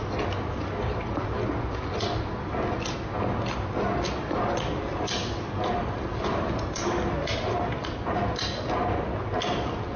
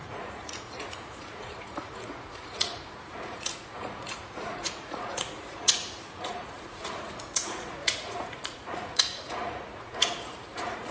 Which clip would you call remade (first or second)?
second